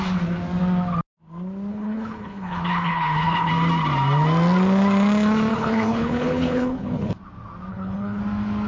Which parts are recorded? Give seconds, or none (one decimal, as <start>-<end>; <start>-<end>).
0.0-1.7; 3.5-5.5; 7.1-7.7; 8.2-8.7